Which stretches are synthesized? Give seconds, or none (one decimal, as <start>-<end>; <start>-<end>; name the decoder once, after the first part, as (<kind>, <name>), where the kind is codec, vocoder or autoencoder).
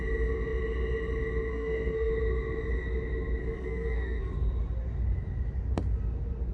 1.5-2.1 (codec, SNAC); 3.4-4.3